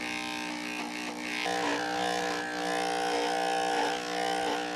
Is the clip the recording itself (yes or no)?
yes